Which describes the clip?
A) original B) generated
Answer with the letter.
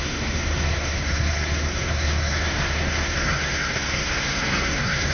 B